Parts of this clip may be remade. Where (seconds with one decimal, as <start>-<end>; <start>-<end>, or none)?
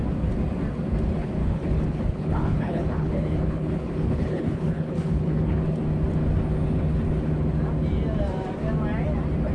1.4-5.6